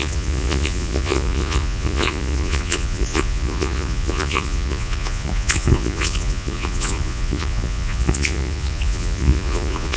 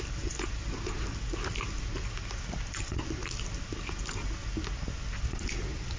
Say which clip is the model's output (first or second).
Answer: first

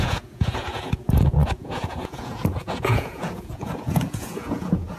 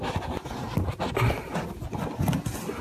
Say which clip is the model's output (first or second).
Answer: first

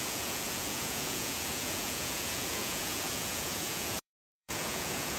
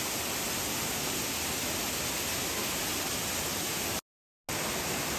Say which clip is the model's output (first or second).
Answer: first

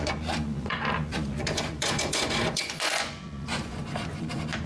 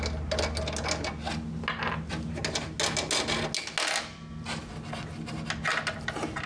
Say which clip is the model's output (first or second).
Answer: first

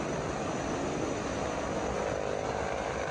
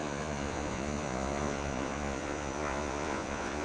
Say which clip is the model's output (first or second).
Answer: second